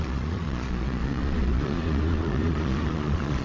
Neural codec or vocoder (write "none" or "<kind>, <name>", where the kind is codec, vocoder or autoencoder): vocoder, Vocos